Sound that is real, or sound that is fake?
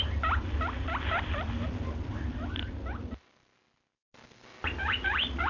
real